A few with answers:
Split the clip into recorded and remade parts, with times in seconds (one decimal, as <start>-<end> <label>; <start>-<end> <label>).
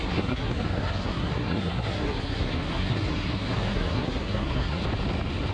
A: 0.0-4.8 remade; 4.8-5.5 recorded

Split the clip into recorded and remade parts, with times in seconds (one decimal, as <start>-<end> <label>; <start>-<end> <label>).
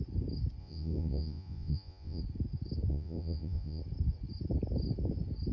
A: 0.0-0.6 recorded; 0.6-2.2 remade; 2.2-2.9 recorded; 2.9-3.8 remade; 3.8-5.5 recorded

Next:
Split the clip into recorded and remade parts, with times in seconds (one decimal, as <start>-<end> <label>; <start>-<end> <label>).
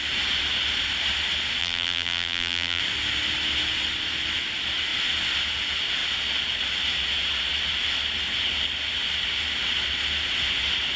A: 0.0-1.6 recorded; 1.6-2.8 remade; 2.8-11.0 recorded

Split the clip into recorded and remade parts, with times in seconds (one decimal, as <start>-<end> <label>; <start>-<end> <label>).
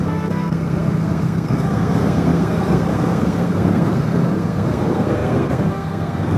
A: 0.0-6.4 remade